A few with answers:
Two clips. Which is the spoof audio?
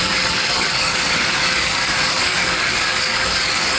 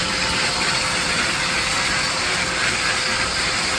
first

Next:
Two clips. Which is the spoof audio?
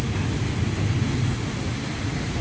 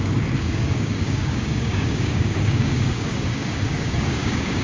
second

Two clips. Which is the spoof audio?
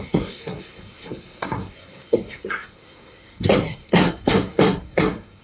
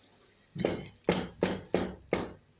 first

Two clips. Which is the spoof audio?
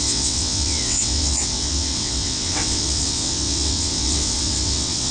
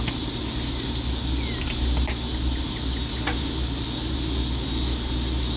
first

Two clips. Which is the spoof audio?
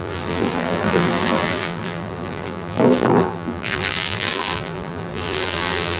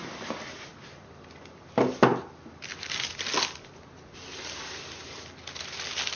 first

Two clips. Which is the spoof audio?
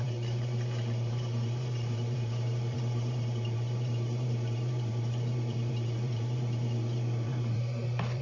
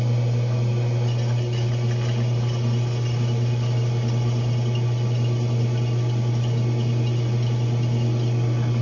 first